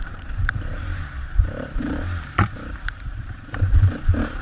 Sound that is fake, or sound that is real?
fake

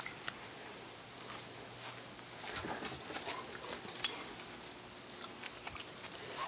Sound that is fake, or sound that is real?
real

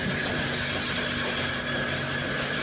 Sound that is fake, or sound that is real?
real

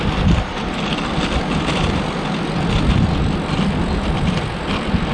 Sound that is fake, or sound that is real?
real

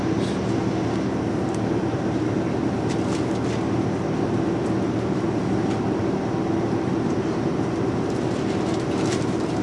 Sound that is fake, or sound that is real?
real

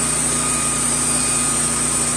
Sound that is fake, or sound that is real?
fake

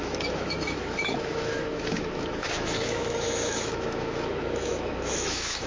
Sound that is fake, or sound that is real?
fake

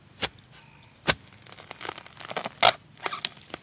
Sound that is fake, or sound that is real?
real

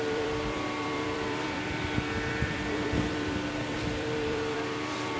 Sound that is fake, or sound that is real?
fake